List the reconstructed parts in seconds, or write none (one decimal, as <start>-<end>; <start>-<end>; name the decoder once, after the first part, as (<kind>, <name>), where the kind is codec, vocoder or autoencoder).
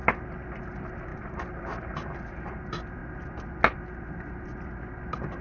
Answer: 1.1-2.6 (vocoder, BigVGAN v2)